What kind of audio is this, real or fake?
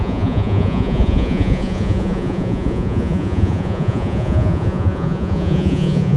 fake